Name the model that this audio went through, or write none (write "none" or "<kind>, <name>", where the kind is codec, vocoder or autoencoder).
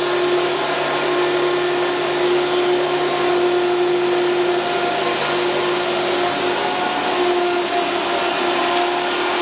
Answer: none